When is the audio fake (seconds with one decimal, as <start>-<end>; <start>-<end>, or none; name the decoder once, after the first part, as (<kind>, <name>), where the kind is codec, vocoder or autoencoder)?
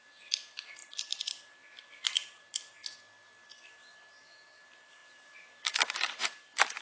0.0-2.8 (vocoder, BigVGAN v2); 4.2-6.8